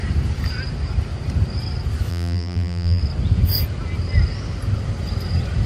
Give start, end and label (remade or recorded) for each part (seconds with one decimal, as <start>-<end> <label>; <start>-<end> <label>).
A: 0.0-2.1 recorded; 2.1-3.0 remade; 3.0-5.7 recorded